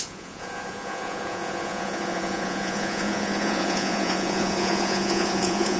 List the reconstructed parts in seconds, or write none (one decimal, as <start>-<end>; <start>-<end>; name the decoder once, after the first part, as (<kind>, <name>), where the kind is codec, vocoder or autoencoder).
0.0-5.8 (vocoder, Vocos)